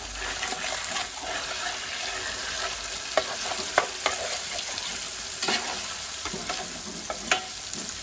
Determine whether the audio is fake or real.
real